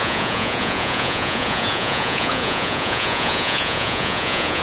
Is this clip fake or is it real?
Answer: fake